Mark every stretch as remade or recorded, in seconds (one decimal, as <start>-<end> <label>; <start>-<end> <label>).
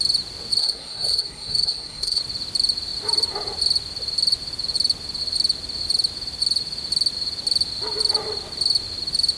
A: 0.0-0.6 recorded; 0.6-2.2 remade; 2.2-9.4 recorded